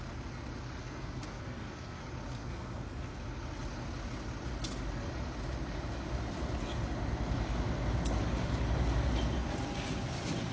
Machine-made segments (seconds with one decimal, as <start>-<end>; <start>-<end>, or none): 0.8-2.0; 2.4-3.2